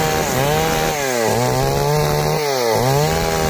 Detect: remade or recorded recorded